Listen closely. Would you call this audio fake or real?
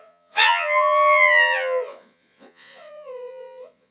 fake